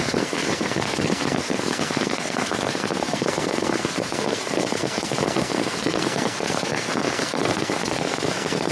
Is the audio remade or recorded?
remade